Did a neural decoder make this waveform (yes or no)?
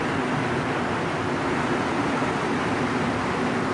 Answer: no